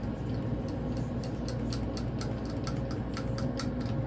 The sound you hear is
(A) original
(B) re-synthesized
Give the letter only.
A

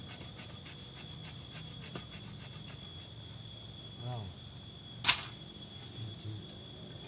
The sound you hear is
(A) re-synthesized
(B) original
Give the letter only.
B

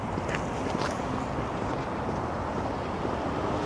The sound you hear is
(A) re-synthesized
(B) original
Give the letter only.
B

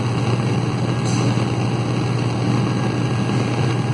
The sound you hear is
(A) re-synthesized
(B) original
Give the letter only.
B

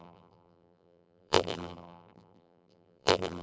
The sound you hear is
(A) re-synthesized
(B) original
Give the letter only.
A